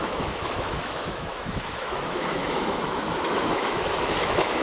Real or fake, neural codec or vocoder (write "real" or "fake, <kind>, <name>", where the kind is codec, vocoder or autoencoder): fake, autoencoder, DAC-VAE